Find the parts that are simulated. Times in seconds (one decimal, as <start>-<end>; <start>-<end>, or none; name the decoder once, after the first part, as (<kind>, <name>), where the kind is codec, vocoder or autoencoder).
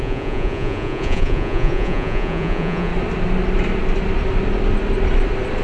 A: 0.0-2.9 (vocoder, Vocos)